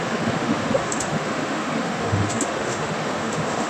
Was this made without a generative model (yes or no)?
no